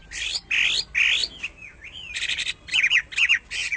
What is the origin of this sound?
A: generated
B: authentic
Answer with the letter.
B